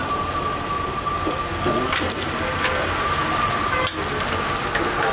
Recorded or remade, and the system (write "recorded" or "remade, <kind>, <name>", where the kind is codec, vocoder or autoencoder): recorded